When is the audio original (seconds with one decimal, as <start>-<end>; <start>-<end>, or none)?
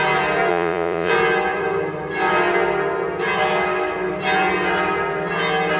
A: 0.0-0.5; 1.1-5.8